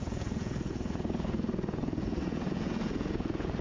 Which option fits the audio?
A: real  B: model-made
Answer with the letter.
B